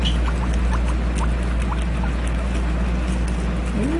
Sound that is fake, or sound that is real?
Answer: real